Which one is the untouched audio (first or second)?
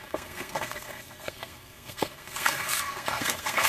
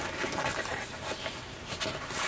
second